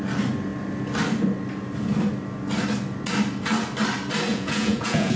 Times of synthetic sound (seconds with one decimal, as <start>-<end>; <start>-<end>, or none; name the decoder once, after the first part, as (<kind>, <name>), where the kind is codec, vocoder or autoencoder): 4.3-5.2 (vocoder, Vocos)